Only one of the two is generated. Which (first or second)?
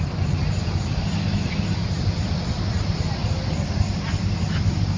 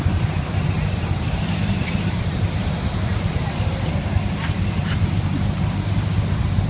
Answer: second